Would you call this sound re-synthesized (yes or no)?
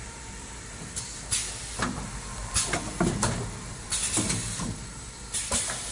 no